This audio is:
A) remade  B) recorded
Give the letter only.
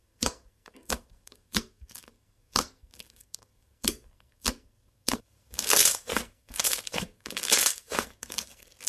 A